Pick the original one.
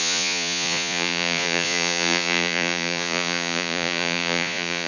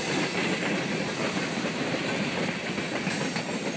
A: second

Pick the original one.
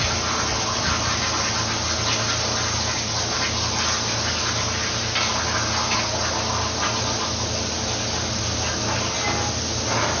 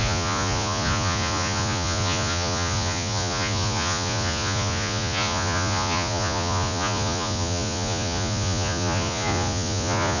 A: first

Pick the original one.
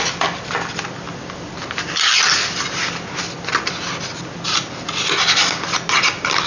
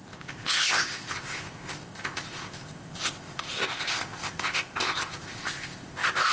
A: first